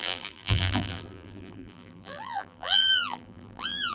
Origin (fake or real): fake